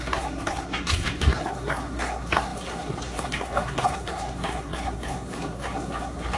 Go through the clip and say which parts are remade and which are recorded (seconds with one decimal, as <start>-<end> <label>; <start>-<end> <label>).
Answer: 0.0-6.4 remade